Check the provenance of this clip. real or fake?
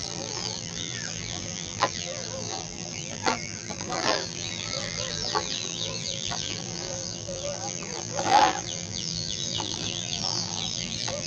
fake